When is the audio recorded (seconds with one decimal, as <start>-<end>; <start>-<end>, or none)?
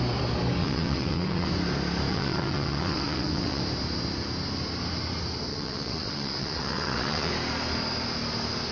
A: 0.0-0.6; 1.5-2.1; 3.6-5.5; 7.3-8.7